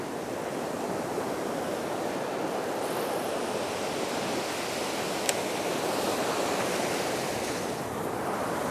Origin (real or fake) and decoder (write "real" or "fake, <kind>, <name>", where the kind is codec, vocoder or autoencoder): real